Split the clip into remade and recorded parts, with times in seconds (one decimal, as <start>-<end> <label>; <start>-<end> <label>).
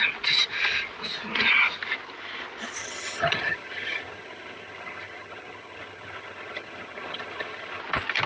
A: 0.0-2.8 recorded; 2.8-7.8 remade; 7.8-8.3 recorded